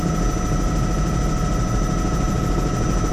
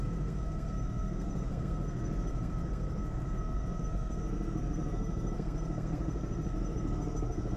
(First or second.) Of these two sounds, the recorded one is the first